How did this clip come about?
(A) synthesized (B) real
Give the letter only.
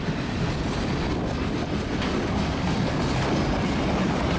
B